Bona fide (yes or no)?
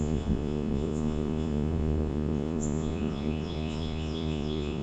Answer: no